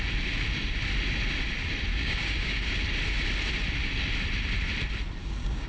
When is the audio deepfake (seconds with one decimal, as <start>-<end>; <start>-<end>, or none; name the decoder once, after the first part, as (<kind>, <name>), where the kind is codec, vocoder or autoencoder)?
1.9-2.7 (codec, DAC); 5.2-5.7